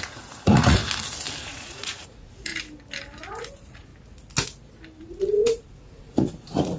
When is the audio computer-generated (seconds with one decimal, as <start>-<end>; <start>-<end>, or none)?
0.0-0.8; 1.4-2.5; 3.5-3.9; 5.0-6.8